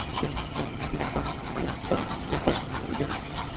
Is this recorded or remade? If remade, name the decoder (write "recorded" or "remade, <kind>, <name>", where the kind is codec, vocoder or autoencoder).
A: remade, vocoder, HiFi-GAN